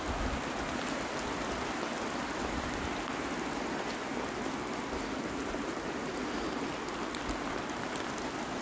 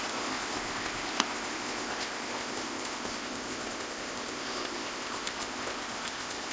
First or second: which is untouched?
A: first